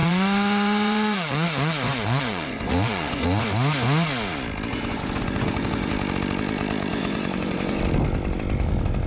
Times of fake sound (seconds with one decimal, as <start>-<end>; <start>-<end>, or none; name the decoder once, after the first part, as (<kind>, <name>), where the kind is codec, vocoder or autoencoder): 0.0-3.4 (vocoder, Vocos); 4.7-5.9; 6.9-7.8